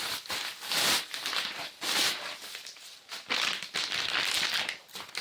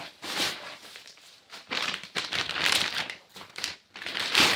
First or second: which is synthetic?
second